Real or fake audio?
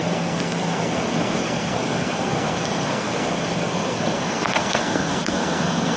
fake